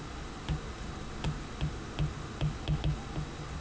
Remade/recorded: recorded